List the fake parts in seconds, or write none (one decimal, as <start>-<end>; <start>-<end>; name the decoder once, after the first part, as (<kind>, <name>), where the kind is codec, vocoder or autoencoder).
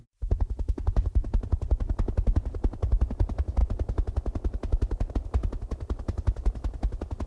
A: none